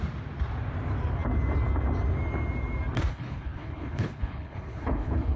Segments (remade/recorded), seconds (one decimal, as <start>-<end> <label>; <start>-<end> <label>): 0.0-3.1 recorded; 3.1-5.4 remade